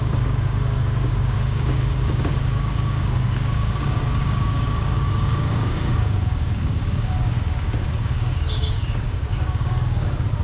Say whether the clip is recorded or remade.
remade